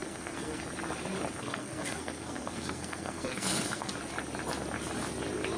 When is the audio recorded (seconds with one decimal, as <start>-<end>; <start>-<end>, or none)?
0.6-1.4; 3.9-5.6